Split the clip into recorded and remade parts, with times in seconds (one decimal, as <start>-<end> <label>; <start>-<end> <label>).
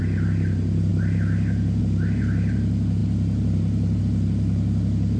0.0-5.2 recorded